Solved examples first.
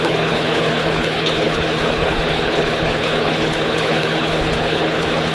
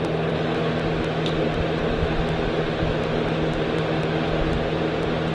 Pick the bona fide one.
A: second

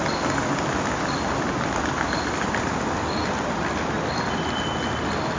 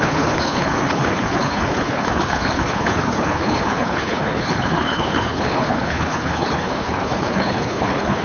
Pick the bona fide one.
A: first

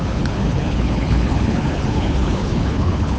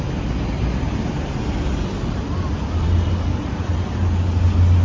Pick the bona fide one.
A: second